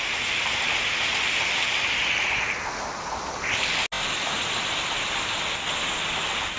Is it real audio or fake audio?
real